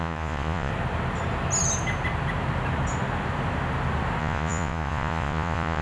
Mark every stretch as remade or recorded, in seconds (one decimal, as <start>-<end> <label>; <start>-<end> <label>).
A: 0.0-0.7 remade; 0.7-4.2 recorded; 4.2-5.8 remade